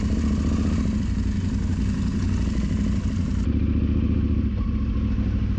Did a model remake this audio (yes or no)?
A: no